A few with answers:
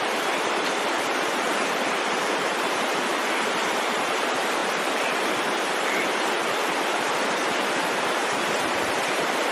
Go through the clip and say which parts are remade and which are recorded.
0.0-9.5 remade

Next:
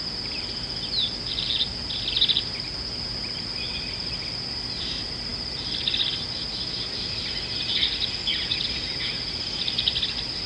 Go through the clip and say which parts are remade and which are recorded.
0.0-10.5 recorded

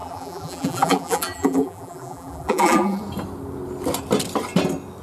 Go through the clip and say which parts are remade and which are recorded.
0.0-3.0 remade; 3.0-5.0 recorded

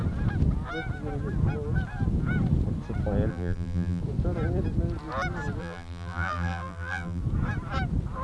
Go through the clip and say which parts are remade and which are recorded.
0.0-3.3 recorded; 3.3-4.0 remade; 4.0-5.6 recorded; 5.6-7.2 remade; 7.2-8.2 recorded

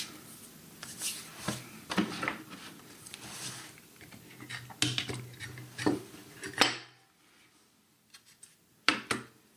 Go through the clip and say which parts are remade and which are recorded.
0.0-1.2 recorded; 1.2-4.0 remade; 4.0-9.6 recorded